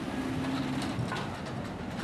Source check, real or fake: real